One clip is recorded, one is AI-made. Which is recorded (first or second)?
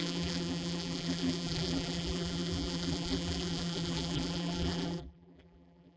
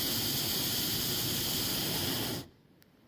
second